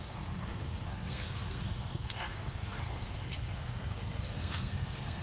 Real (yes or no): no